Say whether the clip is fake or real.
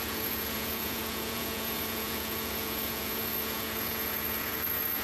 fake